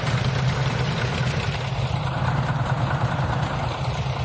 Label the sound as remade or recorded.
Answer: recorded